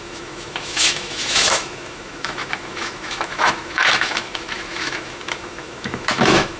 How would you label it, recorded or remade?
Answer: remade